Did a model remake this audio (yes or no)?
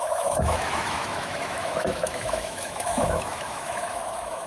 yes